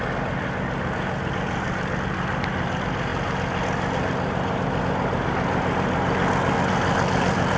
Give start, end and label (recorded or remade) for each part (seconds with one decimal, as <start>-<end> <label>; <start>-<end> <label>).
0.0-7.6 recorded